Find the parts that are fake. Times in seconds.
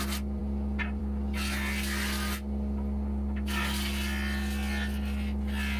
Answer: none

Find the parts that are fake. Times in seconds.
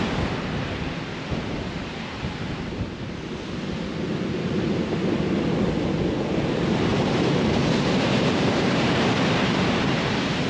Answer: 6.9-9.7 (vocoder, BigVGAN v2)